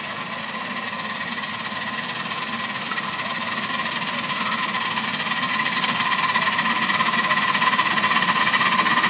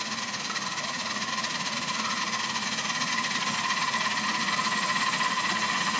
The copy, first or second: second